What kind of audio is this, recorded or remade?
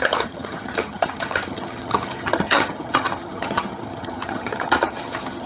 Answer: remade